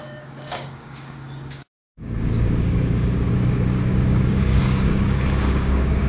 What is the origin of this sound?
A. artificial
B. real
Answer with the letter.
A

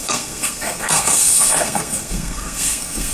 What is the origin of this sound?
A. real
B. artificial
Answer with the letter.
B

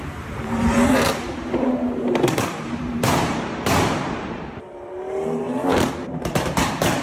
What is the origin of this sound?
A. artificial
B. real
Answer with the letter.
A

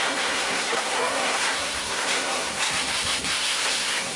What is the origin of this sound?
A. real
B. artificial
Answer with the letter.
B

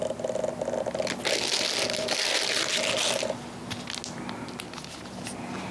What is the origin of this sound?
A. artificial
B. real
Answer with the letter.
B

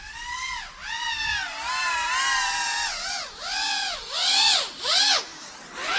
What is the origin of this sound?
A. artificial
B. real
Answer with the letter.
B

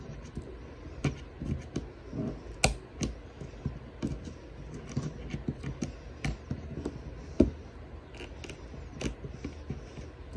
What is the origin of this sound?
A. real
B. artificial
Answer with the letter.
A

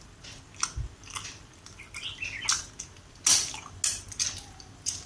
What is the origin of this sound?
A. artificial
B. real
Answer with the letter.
B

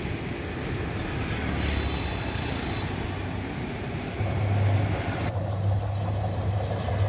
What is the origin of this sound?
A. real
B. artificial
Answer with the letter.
A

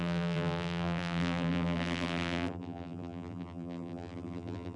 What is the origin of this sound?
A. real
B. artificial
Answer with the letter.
B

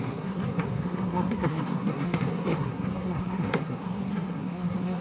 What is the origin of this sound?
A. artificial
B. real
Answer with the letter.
A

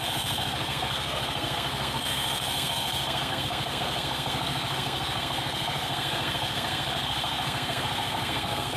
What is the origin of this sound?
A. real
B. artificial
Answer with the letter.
B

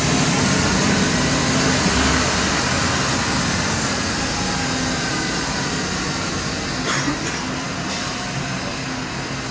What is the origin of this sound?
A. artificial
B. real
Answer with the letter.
B